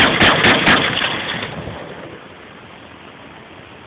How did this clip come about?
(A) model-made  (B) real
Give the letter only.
B